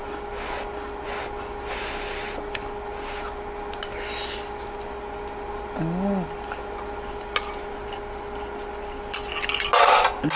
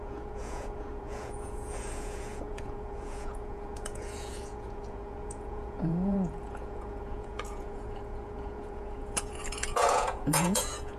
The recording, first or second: first